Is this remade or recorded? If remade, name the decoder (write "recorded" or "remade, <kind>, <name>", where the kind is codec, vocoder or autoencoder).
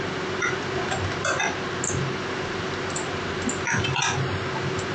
recorded